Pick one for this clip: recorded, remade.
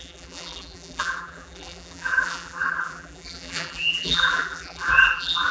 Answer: remade